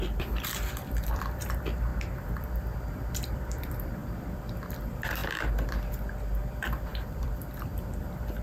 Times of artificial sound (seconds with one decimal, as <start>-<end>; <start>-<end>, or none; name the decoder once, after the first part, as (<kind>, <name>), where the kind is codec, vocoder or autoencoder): 0.0-5.2 (vocoder, BigVGAN v2); 5.9-8.4